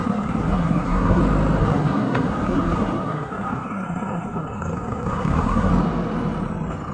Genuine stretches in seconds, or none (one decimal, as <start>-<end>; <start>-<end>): 1.2-1.6; 5.7-6.9